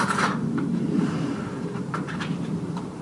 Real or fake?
fake